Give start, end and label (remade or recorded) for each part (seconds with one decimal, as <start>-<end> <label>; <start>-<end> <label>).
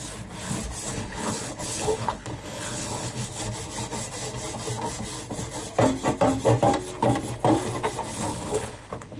0.0-0.9 recorded; 0.9-3.4 remade; 3.4-8.3 recorded; 8.3-9.2 remade